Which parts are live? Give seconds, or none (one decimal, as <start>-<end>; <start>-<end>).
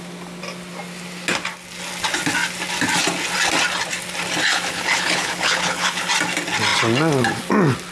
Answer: 0.0-4.5; 6.1-7.9